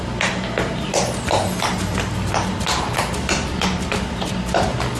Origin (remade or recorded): recorded